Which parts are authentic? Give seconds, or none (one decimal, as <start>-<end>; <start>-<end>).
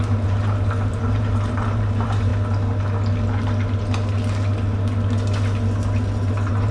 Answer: 2.3-6.3